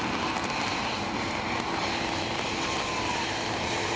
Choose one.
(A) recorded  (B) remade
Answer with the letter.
A